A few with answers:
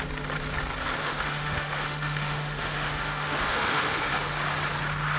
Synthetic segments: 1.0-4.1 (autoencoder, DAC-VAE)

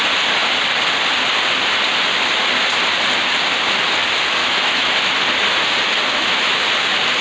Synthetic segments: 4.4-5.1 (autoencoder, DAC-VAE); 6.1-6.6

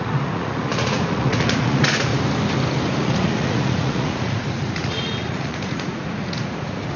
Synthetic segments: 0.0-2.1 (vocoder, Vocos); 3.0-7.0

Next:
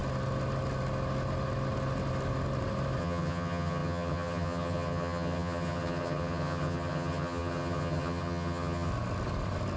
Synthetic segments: 3.0-8.9 (vocoder, HiFi-GAN)

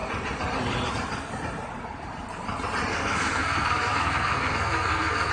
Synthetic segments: 2.9-5.3 (codec, SNAC)